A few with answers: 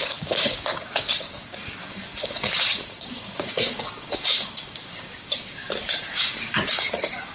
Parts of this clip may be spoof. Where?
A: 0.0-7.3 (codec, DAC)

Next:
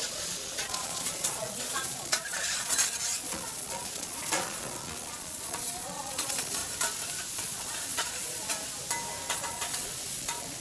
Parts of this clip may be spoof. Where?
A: 0.0-6.6 (vocoder, Vocos); 7.3-8.5; 9.3-10.6

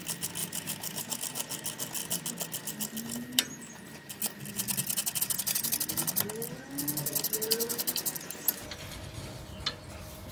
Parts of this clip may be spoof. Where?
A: 0.4-1.2 (vocoder, BigVGAN v2)